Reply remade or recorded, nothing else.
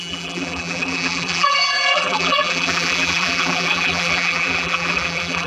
remade